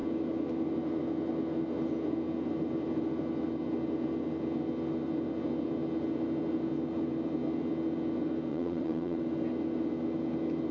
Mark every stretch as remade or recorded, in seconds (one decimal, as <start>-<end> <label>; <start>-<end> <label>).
0.0-8.5 recorded; 8.5-9.2 remade; 9.2-10.7 recorded